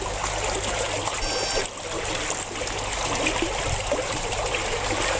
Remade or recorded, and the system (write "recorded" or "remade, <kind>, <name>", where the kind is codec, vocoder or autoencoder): recorded